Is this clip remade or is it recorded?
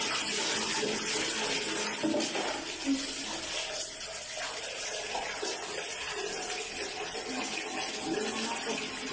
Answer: recorded